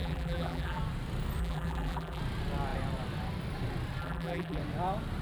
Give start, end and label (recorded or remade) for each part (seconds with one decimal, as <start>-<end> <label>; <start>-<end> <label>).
0.0-0.8 remade; 0.8-1.4 recorded; 1.4-2.2 remade; 2.2-4.0 recorded; 4.0-4.6 remade; 4.6-5.2 recorded